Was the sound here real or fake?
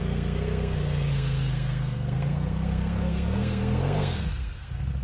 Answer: fake